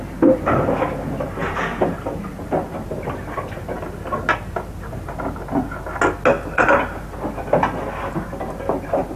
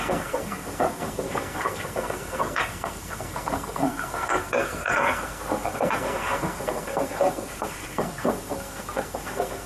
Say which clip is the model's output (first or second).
second